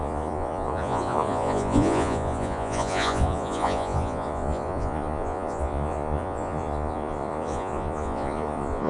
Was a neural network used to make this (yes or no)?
yes